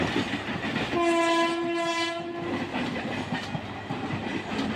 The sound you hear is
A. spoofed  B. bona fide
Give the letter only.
B